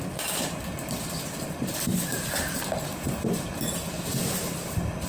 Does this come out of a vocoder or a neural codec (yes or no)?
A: no